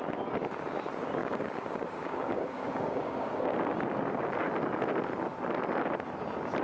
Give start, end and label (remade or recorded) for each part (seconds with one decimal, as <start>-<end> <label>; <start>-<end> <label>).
0.0-1.2 recorded; 1.2-3.5 remade; 3.5-6.6 recorded